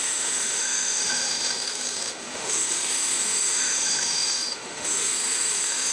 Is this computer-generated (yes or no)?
yes